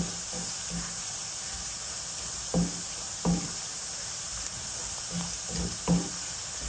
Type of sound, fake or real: real